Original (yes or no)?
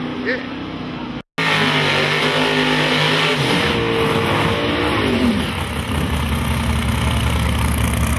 yes